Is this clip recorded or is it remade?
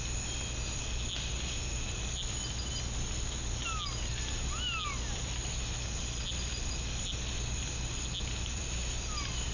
recorded